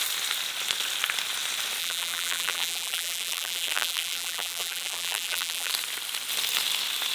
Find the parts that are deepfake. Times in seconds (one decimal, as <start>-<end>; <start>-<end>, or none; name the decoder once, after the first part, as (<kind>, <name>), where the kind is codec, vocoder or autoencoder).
1.8-5.7 (vocoder, BigVGAN v2)

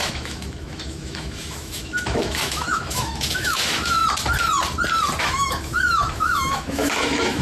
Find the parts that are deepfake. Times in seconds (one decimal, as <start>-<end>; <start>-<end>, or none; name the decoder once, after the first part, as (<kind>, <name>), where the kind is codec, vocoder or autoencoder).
0.0-4.0 (autoencoder, DAC-VAE); 5.2-7.4